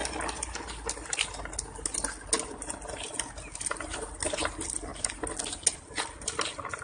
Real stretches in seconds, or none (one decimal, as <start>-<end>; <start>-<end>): 0.0-6.8